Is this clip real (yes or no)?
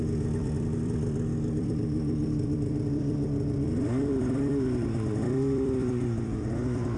no